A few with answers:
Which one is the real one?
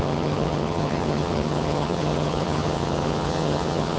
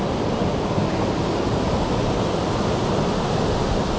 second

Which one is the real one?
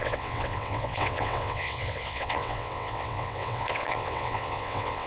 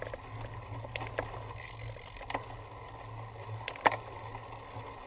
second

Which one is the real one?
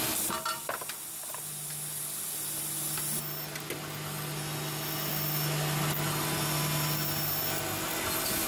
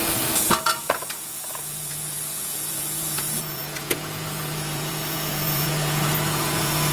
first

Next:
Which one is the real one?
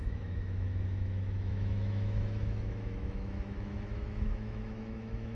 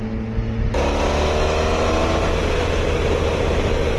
second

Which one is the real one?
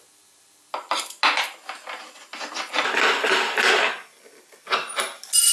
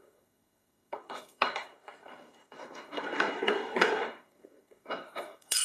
first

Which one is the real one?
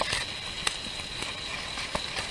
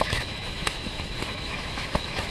first